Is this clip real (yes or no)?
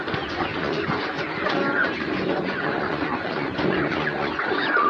no